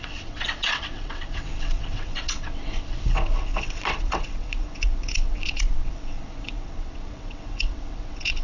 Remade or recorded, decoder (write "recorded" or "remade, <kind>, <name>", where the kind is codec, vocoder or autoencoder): remade, vocoder, WaveNeXt